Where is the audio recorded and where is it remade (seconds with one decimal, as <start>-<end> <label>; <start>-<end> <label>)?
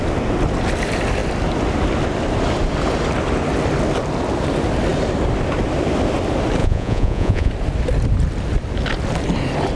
0.0-6.6 recorded; 6.6-7.5 remade; 7.5-9.8 recorded